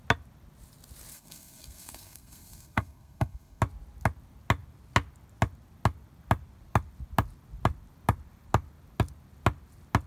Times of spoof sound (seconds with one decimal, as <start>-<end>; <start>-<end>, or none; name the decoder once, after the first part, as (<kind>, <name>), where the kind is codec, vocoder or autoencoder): 1.1-3.6 (codec, SNAC)